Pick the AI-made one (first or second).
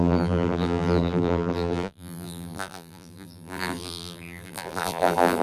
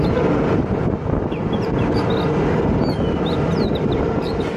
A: first